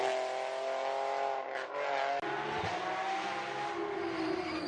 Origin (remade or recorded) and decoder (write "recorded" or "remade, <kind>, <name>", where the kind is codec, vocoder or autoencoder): recorded